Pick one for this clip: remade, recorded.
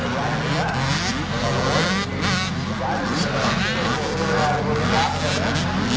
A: recorded